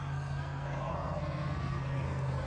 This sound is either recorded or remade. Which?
remade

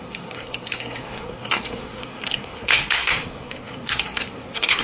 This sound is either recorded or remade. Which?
remade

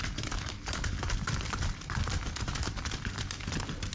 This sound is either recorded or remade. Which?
remade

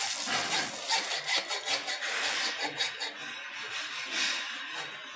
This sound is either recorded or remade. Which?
recorded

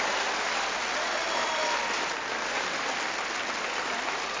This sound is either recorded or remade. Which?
remade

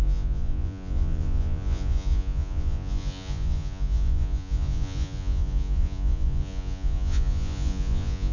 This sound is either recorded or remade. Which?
remade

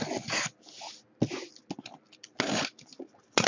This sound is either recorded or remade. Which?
recorded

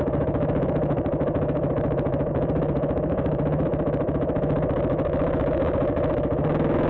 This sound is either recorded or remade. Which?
remade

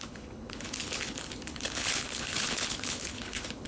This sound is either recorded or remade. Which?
remade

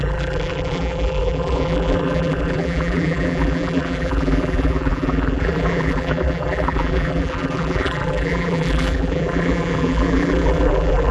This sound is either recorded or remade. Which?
remade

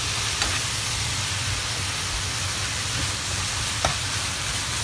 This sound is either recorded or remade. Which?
recorded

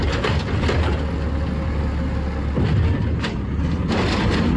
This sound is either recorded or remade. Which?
recorded